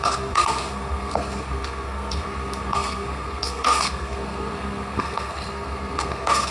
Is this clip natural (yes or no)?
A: no